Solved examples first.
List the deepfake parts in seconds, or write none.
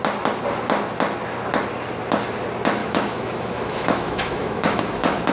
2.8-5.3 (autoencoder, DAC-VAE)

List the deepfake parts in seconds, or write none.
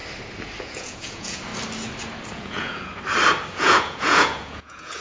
0.6-1.5 (vocoder, Vocos); 2.3-2.9; 3.5-5.0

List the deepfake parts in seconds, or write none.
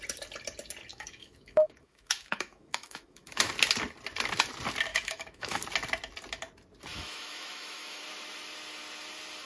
0.9-3.5 (autoencoder, DAC-VAE); 4.9-5.6; 6.9-8.0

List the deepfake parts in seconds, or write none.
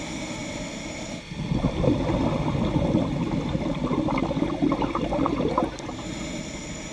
none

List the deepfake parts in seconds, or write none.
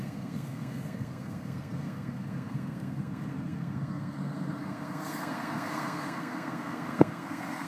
0.0-7.7 (codec, SNAC)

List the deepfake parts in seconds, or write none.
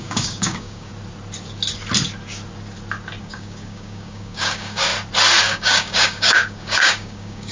0.0-0.9 (codec, DAC); 3.2-4.9; 5.4-7.5